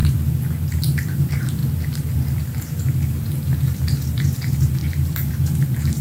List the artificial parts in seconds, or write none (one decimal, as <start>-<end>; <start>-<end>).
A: 0.7-1.6; 4.3-4.8; 5.3-6.0